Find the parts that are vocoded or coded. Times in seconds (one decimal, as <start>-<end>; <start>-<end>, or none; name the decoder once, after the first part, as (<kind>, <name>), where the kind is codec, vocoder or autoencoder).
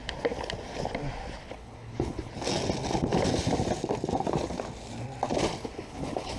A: 1.4-2.3 (codec, HILCodec); 5.6-6.4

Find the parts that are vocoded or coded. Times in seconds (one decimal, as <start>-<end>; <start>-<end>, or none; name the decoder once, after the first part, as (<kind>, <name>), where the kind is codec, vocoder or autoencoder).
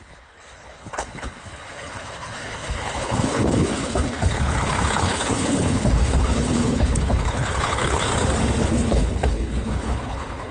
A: 0.0-8.1 (codec, HILCodec); 8.6-10.5